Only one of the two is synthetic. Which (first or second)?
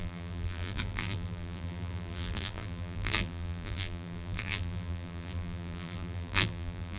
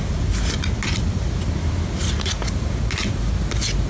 first